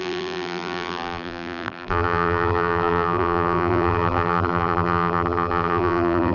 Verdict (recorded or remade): remade